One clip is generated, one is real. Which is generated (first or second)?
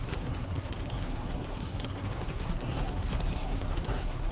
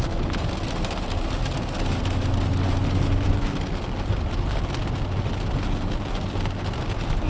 first